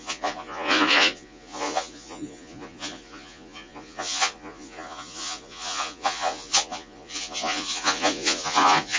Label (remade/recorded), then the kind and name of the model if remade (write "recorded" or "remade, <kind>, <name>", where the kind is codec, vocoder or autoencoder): remade, vocoder, Vocos